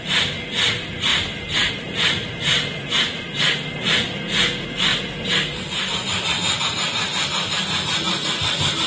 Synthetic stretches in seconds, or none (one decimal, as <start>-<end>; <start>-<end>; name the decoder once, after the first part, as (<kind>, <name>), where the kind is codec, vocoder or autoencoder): 1.1-1.7 (vocoder, BigVGAN v2)